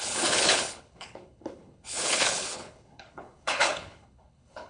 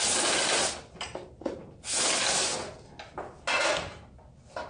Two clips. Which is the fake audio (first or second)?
first